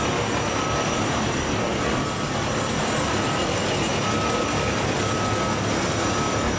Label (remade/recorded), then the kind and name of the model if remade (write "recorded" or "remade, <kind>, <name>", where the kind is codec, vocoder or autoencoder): recorded